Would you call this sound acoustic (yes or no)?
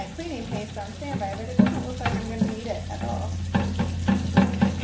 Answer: yes